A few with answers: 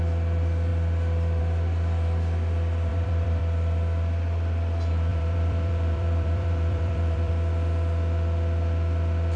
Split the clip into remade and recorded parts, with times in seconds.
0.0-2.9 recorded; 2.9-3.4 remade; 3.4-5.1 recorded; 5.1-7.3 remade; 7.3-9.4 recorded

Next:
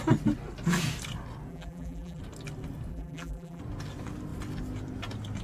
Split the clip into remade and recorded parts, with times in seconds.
0.0-1.5 recorded; 1.5-2.2 remade; 2.2-2.9 recorded; 2.9-3.6 remade; 3.6-5.4 recorded

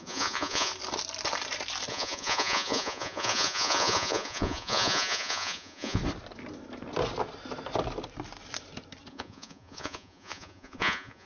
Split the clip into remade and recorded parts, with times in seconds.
0.0-0.7 remade; 0.7-1.9 recorded; 1.9-6.0 remade; 6.0-9.1 recorded; 9.1-11.3 remade

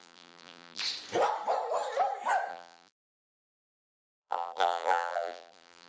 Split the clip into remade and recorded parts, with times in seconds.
0.0-0.8 remade; 0.8-2.5 recorded; 2.5-5.9 remade

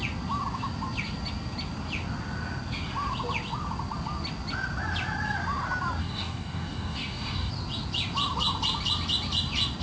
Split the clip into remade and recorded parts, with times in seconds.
0.0-6.0 recorded; 6.0-7.5 remade; 7.5-9.8 recorded

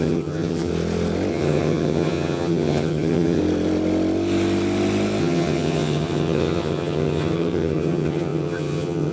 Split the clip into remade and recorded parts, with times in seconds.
0.0-0.7 remade; 0.7-1.3 recorded; 1.3-3.4 remade; 3.4-5.2 recorded; 5.2-9.1 remade